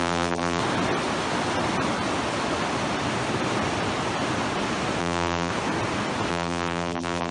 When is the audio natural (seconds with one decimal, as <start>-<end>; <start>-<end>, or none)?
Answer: 0.6-5.0; 5.5-6.3